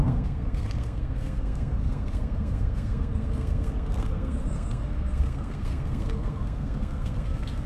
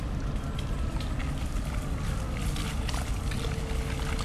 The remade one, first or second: first